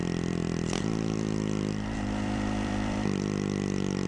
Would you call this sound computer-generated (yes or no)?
yes